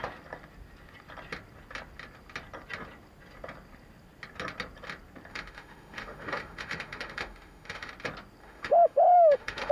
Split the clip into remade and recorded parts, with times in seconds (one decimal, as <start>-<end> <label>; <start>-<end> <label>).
0.0-5.3 recorded; 5.3-7.9 remade; 7.9-8.4 recorded; 8.4-9.7 remade